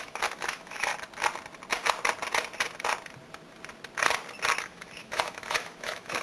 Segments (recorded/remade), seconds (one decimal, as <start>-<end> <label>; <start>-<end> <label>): 0.0-0.9 remade; 0.9-4.6 recorded; 4.6-6.2 remade